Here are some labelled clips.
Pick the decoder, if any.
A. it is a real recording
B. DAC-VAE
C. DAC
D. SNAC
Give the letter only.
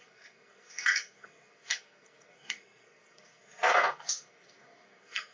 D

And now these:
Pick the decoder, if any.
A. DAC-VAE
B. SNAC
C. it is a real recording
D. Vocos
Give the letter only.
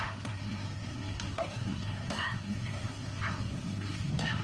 B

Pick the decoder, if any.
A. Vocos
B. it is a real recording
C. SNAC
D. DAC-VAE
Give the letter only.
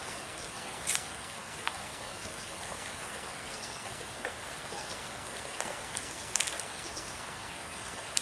C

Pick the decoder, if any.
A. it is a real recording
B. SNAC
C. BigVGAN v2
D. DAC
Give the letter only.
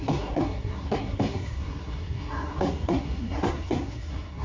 B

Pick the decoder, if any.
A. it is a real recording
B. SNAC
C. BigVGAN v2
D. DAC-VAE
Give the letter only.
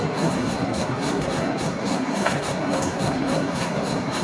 B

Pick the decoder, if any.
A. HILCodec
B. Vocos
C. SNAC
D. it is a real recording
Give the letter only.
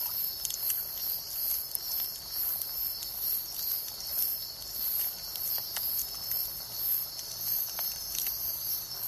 D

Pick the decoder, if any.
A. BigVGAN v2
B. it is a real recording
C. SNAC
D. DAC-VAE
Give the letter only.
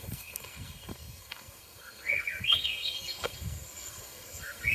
C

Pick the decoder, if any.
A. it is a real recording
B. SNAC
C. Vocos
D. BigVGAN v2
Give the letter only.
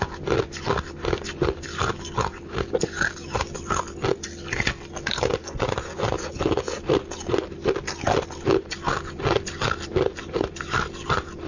A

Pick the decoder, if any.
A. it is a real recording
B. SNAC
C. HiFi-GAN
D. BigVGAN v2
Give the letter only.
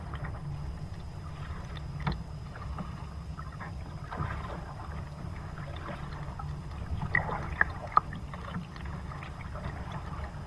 A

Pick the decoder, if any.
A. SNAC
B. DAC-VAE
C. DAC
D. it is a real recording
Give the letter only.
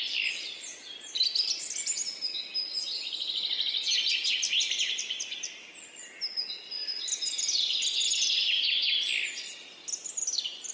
D